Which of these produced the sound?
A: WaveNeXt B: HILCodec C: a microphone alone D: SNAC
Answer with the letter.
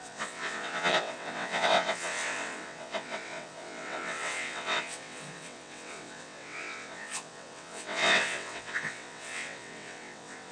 A